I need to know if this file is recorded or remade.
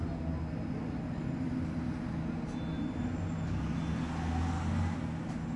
recorded